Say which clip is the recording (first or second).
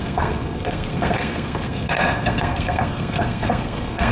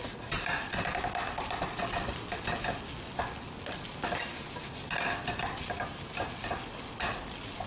second